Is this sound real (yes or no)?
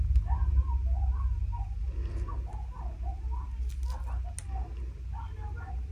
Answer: yes